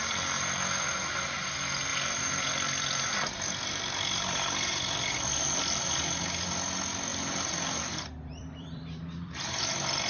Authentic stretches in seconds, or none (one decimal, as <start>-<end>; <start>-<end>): 0.0-1.9; 5.8-7.1